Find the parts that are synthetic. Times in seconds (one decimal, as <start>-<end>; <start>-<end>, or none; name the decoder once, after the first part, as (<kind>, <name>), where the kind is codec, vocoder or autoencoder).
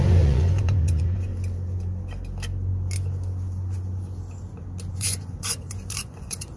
0.0-1.3 (vocoder, Vocos); 4.9-6.6